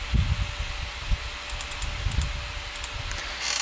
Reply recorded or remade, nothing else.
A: recorded